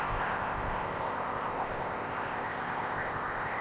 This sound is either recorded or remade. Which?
remade